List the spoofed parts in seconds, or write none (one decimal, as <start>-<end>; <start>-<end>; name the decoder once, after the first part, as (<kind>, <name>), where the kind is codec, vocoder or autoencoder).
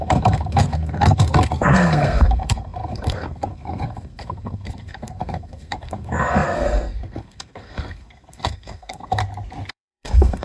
0.0-9.2 (codec, SNAC); 9.7-10.4